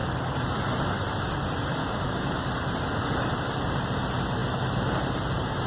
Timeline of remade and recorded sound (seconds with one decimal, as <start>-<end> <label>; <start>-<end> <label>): 0.0-1.8 recorded; 1.8-2.5 remade; 2.5-5.7 recorded